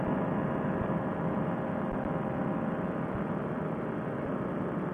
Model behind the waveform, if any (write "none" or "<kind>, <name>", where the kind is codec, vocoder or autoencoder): none